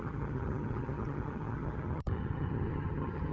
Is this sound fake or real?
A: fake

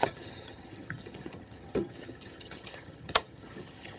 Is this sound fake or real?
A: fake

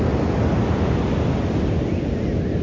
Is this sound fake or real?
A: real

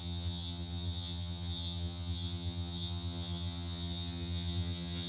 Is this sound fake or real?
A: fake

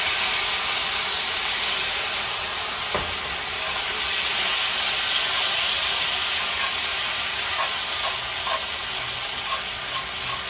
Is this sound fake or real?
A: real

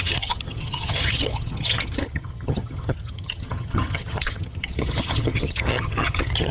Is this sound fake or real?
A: fake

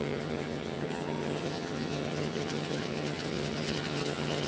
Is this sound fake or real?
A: fake